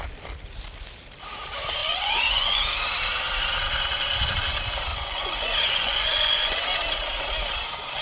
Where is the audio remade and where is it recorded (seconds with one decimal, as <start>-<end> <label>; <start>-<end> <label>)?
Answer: 0.0-1.8 recorded; 1.8-2.6 remade; 2.6-4.9 recorded; 4.9-6.6 remade; 6.6-8.0 recorded